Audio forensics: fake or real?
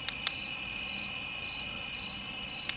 real